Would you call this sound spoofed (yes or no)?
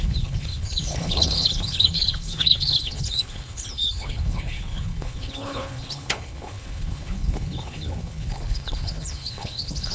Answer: yes